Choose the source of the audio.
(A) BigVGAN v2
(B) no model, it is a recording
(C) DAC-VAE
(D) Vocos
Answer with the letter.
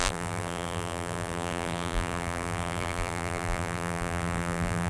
A